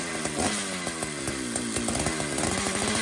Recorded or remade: recorded